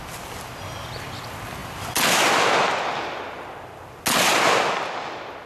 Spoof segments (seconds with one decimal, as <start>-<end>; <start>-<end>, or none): none